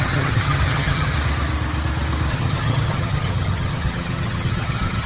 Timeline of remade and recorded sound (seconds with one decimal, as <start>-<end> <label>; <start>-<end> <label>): 0.0-1.1 remade; 1.1-2.3 recorded; 2.3-5.1 remade